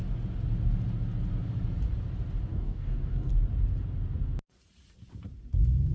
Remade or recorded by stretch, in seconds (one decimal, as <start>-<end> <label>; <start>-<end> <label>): 0.0-2.5 recorded; 2.5-3.3 remade; 3.3-5.9 recorded